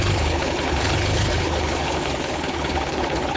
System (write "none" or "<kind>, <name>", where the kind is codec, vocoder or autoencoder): codec, HILCodec